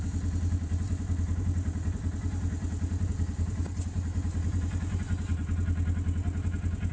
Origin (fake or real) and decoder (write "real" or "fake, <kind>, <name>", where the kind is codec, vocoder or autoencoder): real